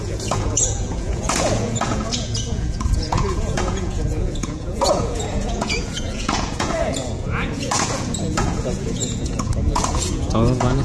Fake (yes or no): yes